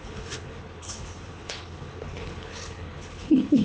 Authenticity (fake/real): fake